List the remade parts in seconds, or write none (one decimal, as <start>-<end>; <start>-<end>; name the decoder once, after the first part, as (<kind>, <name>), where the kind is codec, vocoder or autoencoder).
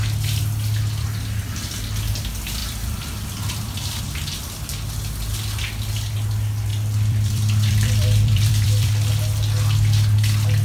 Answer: 2.6-4.0 (vocoder, BigVGAN v2); 6.7-9.1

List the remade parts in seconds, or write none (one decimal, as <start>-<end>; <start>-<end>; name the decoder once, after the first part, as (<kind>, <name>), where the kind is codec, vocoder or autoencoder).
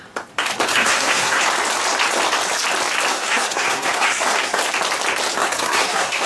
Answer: 0.7-1.4 (codec, SNAC); 3.1-4.6; 5.4-6.3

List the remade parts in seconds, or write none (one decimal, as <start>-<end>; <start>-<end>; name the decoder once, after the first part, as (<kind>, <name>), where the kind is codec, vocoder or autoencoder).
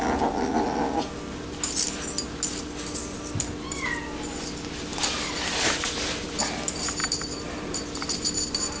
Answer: 4.9-6.4 (vocoder, BigVGAN v2); 7.0-8.8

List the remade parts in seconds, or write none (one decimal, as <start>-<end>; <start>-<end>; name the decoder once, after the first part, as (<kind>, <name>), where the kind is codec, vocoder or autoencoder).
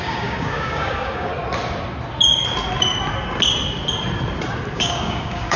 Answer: 0.0-1.3 (codec, DAC); 4.7-5.6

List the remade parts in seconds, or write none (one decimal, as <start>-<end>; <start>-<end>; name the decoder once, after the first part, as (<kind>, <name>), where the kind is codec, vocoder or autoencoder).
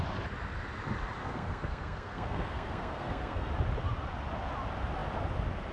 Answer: 1.2-3.5 (codec, SNAC)